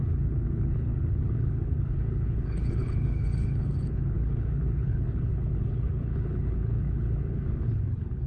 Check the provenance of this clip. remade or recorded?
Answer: remade